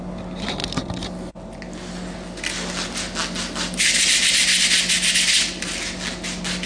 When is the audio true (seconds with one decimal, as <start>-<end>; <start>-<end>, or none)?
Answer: 0.0-6.7